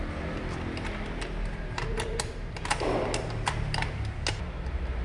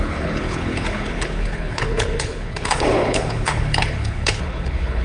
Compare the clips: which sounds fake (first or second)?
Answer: second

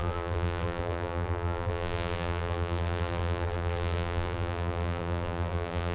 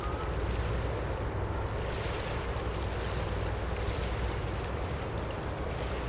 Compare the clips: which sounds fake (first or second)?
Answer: first